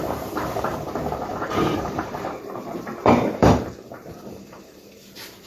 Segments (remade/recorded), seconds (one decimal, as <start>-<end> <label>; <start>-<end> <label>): 0.0-5.5 remade